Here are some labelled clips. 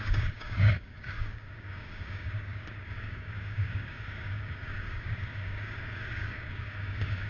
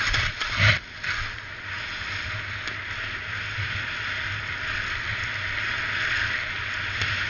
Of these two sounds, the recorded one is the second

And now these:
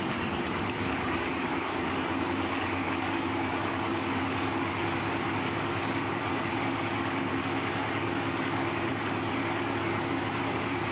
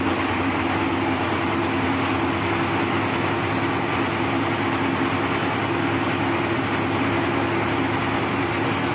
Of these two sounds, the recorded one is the second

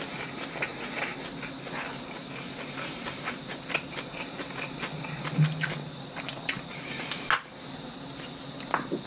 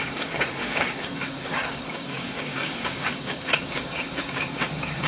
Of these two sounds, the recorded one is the first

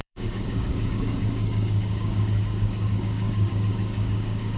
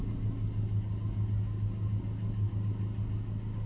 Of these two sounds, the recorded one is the second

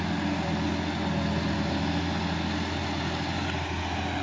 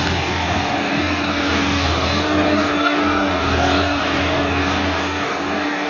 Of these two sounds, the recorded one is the first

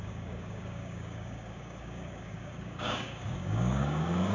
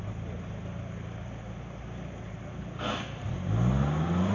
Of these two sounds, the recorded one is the second